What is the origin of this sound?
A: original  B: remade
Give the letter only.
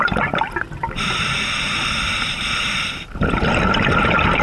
A